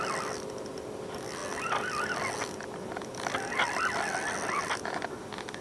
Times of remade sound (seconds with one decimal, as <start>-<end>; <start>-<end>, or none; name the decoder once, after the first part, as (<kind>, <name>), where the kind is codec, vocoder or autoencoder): none